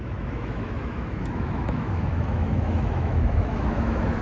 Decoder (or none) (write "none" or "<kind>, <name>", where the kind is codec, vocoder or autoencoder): autoencoder, DAC-VAE